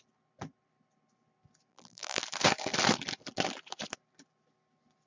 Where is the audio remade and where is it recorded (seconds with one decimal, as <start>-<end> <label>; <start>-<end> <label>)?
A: 0.0-1.7 recorded; 1.7-2.2 remade; 2.2-5.1 recorded